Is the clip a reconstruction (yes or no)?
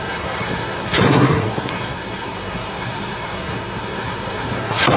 yes